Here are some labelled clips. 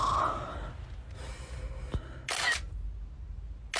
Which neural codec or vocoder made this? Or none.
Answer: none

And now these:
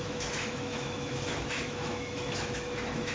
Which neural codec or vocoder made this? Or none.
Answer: autoencoder, DAC-VAE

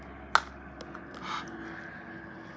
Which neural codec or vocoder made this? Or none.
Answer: none